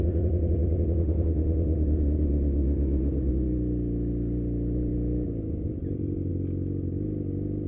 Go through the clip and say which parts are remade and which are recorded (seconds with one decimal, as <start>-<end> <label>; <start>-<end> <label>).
0.0-4.9 recorded; 4.9-6.3 remade; 6.3-7.7 recorded